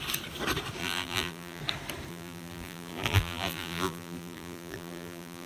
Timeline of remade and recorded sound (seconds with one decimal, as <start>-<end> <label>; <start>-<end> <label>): 0.0-0.8 recorded; 0.8-1.6 remade; 1.6-2.1 recorded; 2.1-5.5 remade